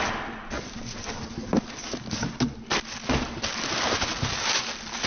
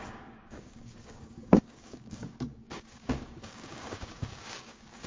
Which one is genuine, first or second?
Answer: first